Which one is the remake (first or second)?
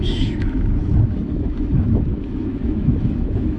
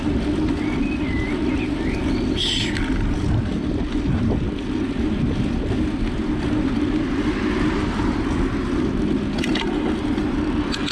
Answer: first